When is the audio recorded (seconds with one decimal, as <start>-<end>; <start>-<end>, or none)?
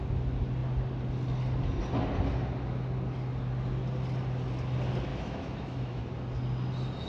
0.0-5.1; 6.0-7.1